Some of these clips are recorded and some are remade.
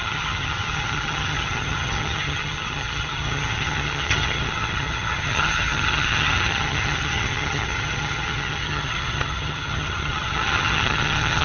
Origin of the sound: remade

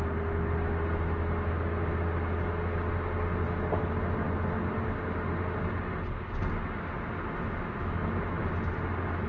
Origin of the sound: recorded